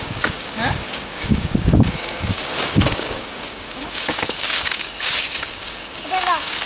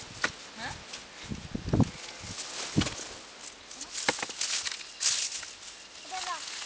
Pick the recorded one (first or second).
second